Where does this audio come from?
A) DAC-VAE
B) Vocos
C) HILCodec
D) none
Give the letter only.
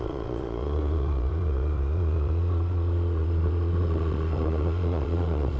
B